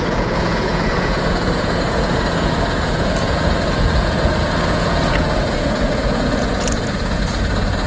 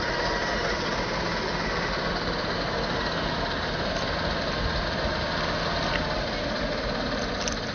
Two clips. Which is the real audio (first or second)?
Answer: second